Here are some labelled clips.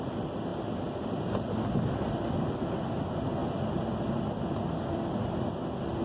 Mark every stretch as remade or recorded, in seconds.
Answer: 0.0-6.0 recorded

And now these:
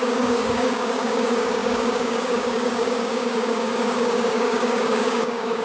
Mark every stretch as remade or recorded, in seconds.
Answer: 0.0-5.6 remade